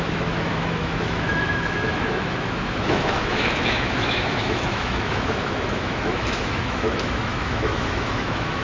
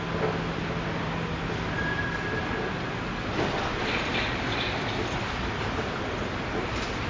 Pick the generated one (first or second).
first